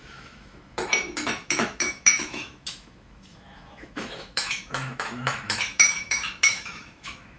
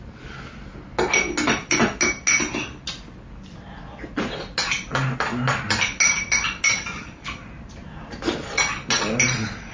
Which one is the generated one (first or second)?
first